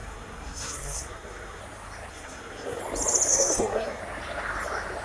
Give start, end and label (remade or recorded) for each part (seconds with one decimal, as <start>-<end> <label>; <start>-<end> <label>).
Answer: 0.0-1.6 remade; 1.6-2.1 recorded; 2.1-2.8 remade; 2.8-3.3 recorded; 3.3-4.0 remade; 4.0-5.0 recorded